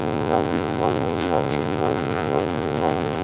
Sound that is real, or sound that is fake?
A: fake